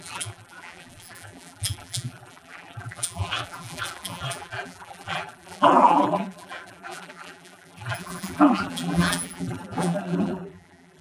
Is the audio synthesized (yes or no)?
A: yes